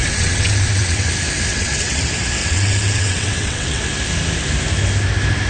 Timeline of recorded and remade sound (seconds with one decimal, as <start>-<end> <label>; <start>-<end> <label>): 0.0-1.1 remade; 1.1-1.5 recorded; 1.5-2.0 remade; 2.0-2.4 recorded; 2.4-3.8 remade; 3.8-5.5 recorded